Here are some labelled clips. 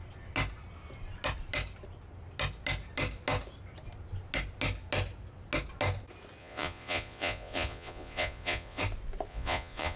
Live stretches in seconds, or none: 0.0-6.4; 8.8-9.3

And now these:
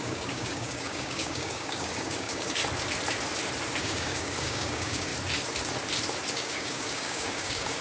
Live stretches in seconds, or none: 2.6-3.8; 5.1-6.3

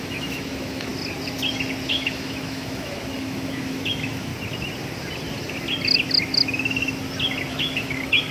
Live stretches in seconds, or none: 0.9-1.9; 4.3-7.5

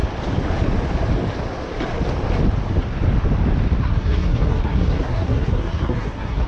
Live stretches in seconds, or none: 0.0-3.8